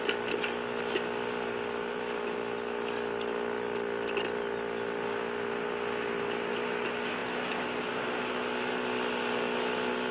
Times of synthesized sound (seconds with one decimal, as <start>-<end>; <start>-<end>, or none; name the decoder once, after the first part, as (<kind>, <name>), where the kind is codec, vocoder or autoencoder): none